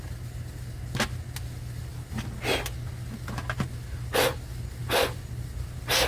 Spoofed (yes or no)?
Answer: no